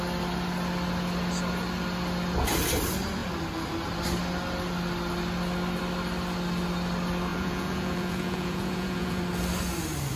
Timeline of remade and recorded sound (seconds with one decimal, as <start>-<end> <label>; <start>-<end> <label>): 0.0-7.3 recorded; 7.3-9.2 remade; 9.2-10.2 recorded